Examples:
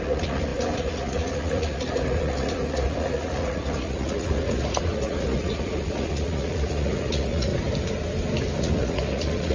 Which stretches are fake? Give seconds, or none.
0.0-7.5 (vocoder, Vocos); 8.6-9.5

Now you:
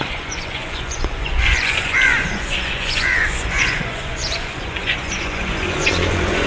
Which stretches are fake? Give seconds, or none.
0.0-6.5 (vocoder, Vocos)

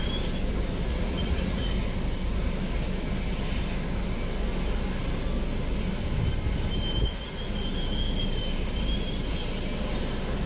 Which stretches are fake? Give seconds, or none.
0.9-1.7 (vocoder, Vocos)

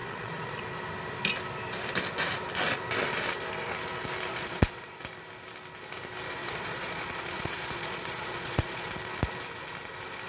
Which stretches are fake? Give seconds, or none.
0.0-0.6 (vocoder, Vocos); 4.3-5.0; 6.4-8.9